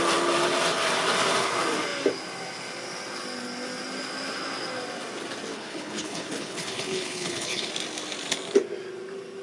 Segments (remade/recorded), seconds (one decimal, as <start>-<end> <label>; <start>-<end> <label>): 0.0-5.5 recorded; 5.5-7.7 remade; 7.7-9.4 recorded